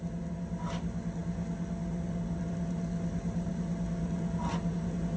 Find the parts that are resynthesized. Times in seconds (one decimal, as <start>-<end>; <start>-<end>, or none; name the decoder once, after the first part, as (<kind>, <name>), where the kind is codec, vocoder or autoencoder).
none